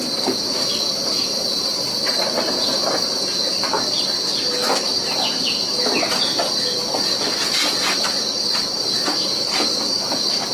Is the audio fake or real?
fake